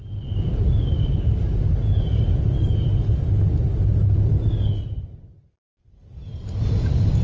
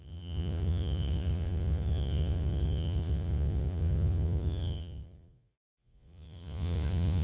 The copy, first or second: second